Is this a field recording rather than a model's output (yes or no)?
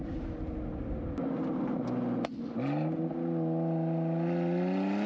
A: yes